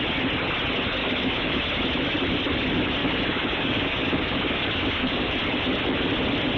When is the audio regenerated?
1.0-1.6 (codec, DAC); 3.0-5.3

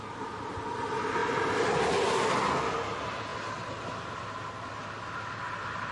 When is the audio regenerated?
none

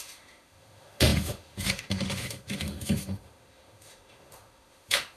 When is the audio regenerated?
0.0-5.2 (autoencoder, DAC-VAE)